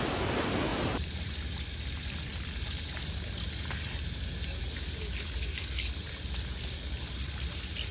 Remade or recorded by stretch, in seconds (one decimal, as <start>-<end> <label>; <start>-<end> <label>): 0.0-0.7 recorded; 0.7-1.3 remade; 1.3-7.9 recorded